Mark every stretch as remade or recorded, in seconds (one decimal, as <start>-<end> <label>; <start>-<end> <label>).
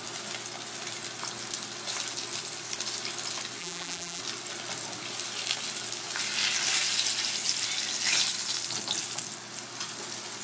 0.0-3.6 recorded; 3.6-4.2 remade; 4.2-10.4 recorded